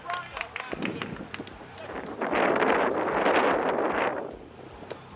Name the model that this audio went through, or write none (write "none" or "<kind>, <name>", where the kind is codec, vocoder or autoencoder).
none